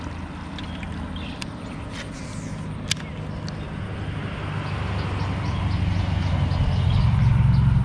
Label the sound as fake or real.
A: real